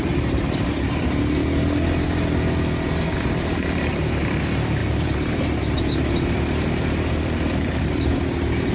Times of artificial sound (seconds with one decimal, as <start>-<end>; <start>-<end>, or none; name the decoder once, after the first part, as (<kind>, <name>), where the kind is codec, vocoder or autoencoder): 0.0-1.4 (vocoder, BigVGAN v2); 3.0-8.7